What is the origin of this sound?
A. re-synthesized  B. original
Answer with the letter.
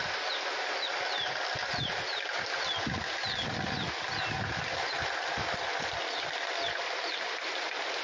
B